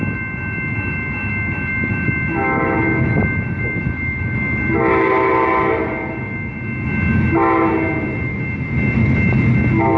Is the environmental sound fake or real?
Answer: real